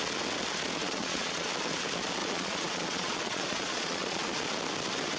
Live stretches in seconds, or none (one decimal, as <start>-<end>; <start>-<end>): 0.0-0.8; 1.5-2.2; 4.4-5.2